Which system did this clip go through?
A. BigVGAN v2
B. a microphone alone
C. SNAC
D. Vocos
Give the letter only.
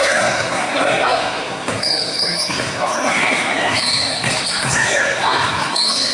C